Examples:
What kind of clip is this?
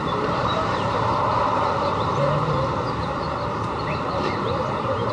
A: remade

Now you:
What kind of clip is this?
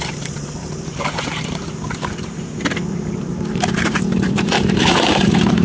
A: remade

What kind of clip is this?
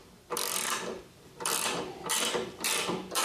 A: remade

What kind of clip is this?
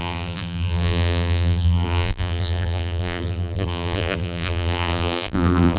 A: remade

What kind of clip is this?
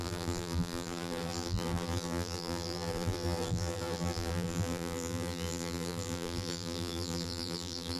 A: remade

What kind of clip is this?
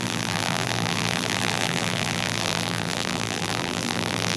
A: remade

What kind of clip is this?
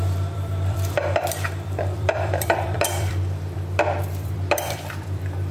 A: remade